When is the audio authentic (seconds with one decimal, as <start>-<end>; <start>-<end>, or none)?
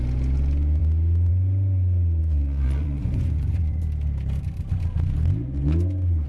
0.0-2.2; 3.8-6.3